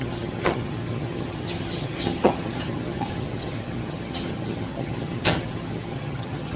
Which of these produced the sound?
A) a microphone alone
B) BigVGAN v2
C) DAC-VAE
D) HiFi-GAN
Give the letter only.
D